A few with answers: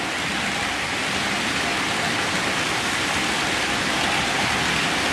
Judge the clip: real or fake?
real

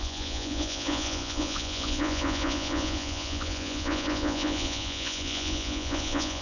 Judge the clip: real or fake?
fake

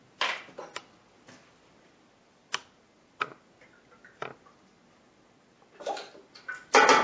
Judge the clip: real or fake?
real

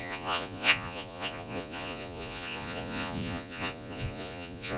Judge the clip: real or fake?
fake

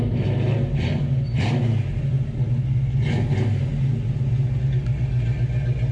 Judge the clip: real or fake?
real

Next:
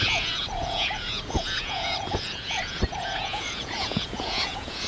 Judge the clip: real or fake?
fake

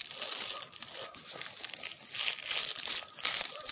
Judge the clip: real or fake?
real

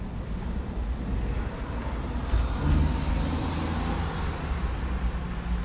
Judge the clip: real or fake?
real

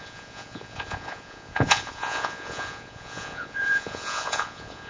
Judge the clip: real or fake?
fake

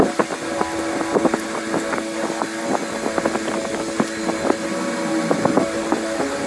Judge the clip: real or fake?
real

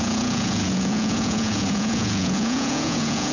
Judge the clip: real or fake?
fake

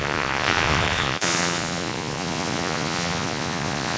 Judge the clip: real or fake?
fake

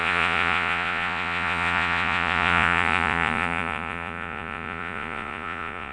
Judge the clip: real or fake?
fake